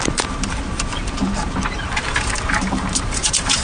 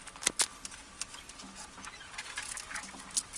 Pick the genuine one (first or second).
second